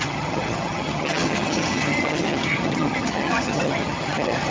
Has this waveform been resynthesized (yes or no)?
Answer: yes